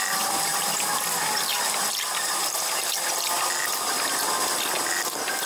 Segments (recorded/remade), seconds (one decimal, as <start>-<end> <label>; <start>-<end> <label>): 0.0-5.5 recorded